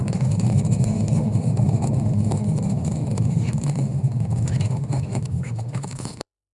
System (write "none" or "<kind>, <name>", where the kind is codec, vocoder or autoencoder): autoencoder, DAC-VAE